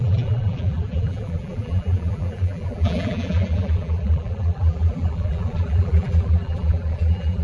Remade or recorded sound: remade